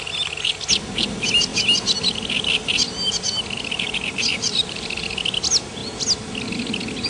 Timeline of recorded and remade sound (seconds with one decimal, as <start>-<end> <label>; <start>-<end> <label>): 0.0-4.3 recorded; 4.3-5.0 remade; 5.0-7.1 recorded